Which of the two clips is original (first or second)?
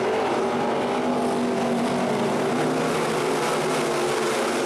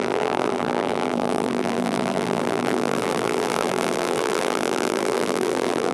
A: first